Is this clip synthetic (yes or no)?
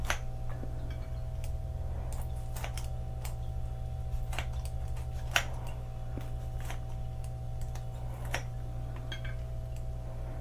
no